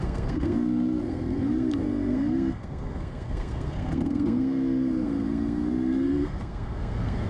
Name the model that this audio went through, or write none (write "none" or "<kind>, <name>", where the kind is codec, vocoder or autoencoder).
codec, SNAC